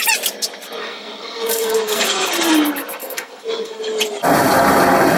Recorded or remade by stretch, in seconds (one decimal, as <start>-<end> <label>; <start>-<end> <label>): 0.0-0.8 recorded; 0.8-2.3 remade; 2.3-3.0 recorded; 3.0-3.8 remade; 3.8-5.2 recorded